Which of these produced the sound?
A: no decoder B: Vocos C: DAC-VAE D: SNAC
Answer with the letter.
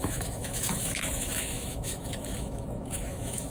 C